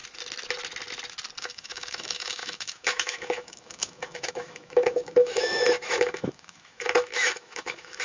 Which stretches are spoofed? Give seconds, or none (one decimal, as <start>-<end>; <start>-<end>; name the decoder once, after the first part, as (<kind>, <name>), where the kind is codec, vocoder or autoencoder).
1.4-8.0 (autoencoder, DAC-VAE)